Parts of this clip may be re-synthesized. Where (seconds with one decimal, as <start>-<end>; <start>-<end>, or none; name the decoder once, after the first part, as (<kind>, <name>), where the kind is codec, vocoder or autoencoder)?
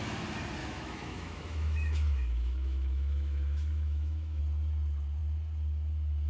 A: 0.6-4.4 (autoencoder, DAC-VAE)